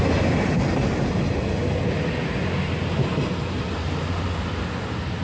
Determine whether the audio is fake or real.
real